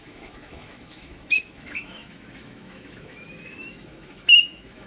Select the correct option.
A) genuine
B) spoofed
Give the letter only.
B